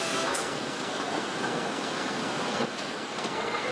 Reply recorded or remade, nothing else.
remade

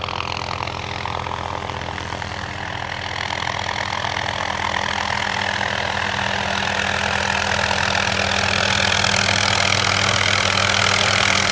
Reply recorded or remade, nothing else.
recorded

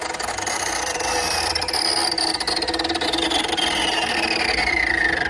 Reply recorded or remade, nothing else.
remade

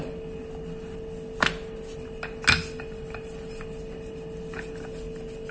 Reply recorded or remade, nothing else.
recorded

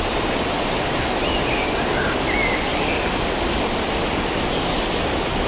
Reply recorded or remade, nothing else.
recorded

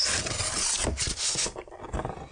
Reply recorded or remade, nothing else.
recorded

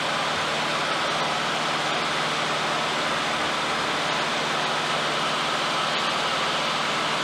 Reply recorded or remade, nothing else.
recorded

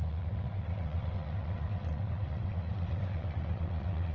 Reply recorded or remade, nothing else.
remade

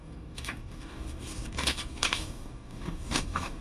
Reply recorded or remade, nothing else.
remade